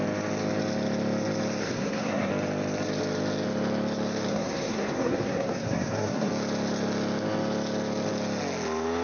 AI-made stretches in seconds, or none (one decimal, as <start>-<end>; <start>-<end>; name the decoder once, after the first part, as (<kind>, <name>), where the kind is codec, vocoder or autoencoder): 1.6-2.3 (codec, SNAC); 4.3-6.3